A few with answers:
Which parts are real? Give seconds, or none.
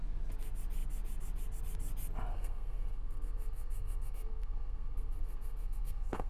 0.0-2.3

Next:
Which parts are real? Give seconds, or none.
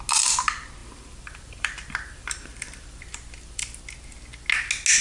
0.0-0.8; 3.8-5.0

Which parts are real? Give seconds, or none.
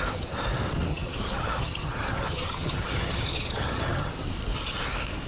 0.0-0.9; 4.1-5.3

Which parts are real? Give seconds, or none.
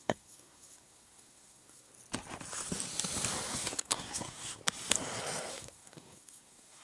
1.9-3.5; 4.6-5.5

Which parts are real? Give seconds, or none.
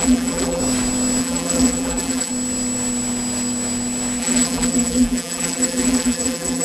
0.6-1.2; 2.3-4.2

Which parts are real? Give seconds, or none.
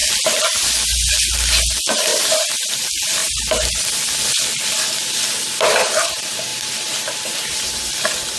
0.0-2.1; 2.8-3.2; 3.7-6.5; 7.8-8.4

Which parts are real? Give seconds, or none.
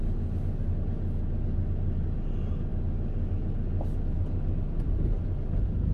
0.0-5.9